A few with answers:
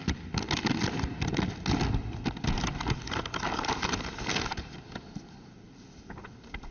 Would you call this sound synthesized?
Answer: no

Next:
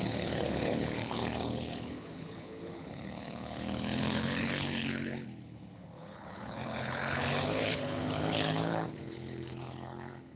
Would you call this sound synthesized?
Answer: yes